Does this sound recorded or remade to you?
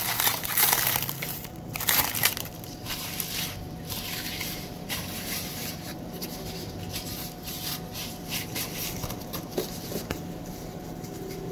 remade